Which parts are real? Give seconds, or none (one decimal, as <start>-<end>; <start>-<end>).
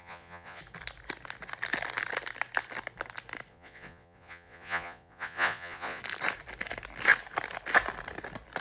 0.6-3.5; 6.0-8.6